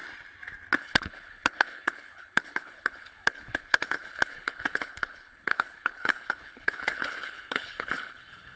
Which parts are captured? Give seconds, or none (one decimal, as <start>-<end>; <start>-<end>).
0.0-0.8